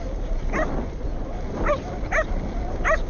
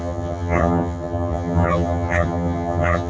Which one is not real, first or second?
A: second